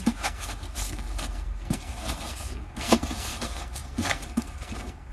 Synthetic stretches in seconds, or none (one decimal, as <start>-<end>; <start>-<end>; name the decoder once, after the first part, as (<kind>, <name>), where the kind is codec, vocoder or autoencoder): 0.0-5.1 (codec, SNAC)